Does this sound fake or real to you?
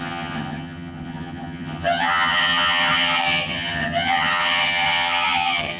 fake